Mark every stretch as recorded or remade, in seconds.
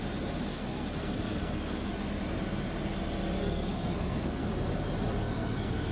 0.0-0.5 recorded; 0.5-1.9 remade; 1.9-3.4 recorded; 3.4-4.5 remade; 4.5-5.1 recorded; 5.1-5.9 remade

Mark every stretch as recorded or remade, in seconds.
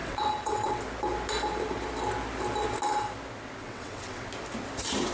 0.0-0.8 remade; 0.8-3.6 recorded; 3.6-4.3 remade; 4.3-5.1 recorded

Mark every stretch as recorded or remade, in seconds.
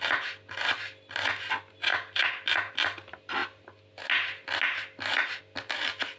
0.0-6.2 recorded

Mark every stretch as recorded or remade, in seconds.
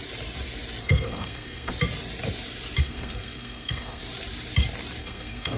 0.0-0.8 recorded; 0.8-1.7 remade; 1.7-2.8 recorded; 2.8-4.0 remade; 4.0-5.0 recorded; 5.0-5.6 remade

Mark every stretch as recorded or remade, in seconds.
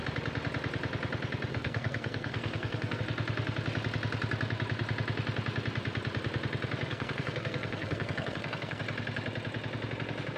0.0-1.5 recorded; 1.5-3.0 remade; 3.0-6.9 recorded; 6.9-8.8 remade; 8.8-10.4 recorded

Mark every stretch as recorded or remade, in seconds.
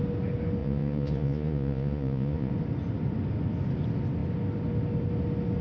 0.0-0.6 recorded; 0.6-2.5 remade; 2.5-5.6 recorded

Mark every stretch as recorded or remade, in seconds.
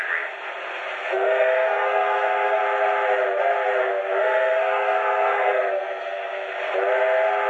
0.0-1.0 recorded; 1.0-2.6 remade; 2.6-3.8 recorded; 3.8-6.5 remade; 6.5-7.5 recorded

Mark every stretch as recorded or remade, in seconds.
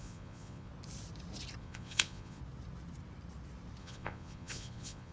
0.0-0.7 remade; 0.7-1.6 recorded; 1.6-2.4 remade; 2.4-3.8 recorded; 3.8-5.1 remade